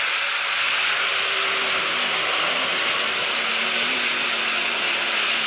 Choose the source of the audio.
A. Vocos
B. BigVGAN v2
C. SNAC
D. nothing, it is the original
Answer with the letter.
D